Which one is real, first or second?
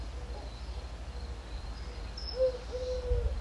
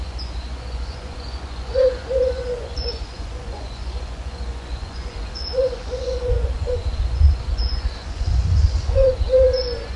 first